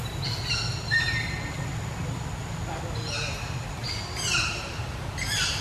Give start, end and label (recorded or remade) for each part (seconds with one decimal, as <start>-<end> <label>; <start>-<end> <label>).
0.0-5.6 recorded